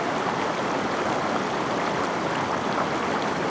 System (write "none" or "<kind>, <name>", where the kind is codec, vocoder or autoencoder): none